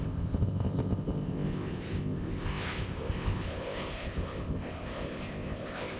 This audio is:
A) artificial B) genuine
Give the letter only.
A